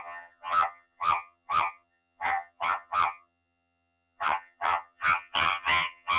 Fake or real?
fake